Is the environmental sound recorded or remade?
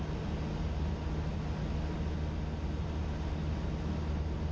recorded